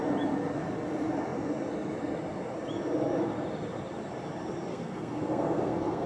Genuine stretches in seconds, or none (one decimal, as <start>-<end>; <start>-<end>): 0.0-4.7